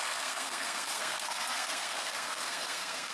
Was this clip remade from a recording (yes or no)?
yes